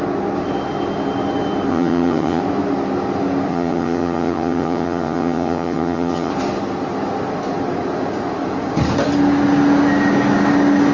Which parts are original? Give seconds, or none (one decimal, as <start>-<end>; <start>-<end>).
0.0-1.7; 2.4-3.5; 6.3-10.9